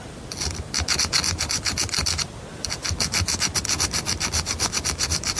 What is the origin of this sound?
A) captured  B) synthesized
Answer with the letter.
A